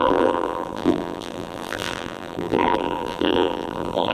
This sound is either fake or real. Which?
fake